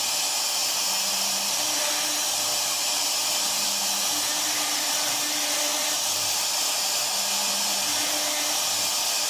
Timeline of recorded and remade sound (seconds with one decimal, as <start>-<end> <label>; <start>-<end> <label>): 0.0-0.6 recorded; 0.6-1.9 remade; 1.9-2.5 recorded; 2.5-6.5 remade; 6.5-9.3 recorded